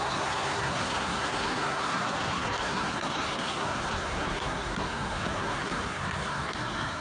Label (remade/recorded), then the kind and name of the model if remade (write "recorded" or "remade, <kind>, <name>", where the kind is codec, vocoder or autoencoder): remade, codec, SNAC